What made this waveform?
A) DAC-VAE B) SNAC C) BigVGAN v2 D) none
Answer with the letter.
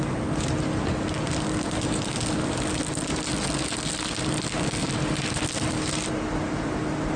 D